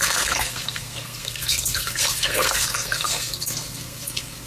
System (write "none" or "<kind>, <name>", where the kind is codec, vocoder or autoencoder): codec, SNAC